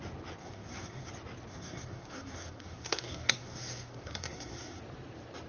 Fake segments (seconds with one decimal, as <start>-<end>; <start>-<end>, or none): 0.4-1.1; 1.5-4.8